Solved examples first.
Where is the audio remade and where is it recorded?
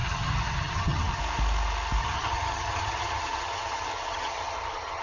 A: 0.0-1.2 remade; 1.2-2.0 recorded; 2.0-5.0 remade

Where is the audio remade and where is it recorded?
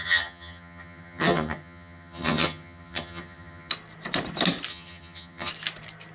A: 0.0-3.7 remade; 3.7-4.7 recorded; 4.7-5.5 remade; 5.5-6.1 recorded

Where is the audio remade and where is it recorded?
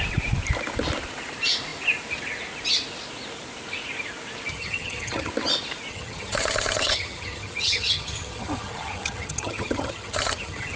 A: 0.0-4.5 recorded; 4.5-5.3 remade; 5.3-5.9 recorded; 5.9-10.8 remade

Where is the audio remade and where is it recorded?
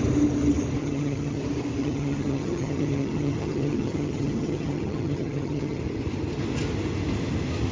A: 0.0-0.8 recorded; 0.8-1.4 remade; 1.4-1.8 recorded; 1.8-5.8 remade; 5.8-7.7 recorded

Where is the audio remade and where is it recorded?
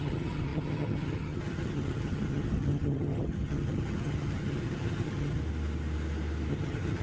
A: 0.0-5.4 remade; 5.4-6.5 recorded; 6.5-7.0 remade